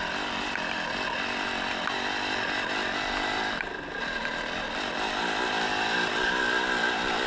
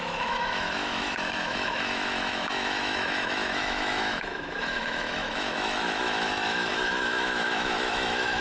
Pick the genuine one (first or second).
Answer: first